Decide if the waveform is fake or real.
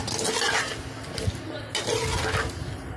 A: real